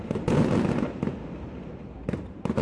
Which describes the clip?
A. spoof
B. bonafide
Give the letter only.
A